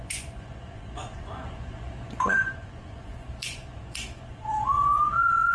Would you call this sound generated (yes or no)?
yes